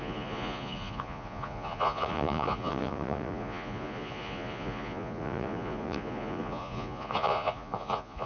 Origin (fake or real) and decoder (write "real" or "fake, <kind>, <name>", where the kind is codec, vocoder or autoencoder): fake, vocoder, Vocos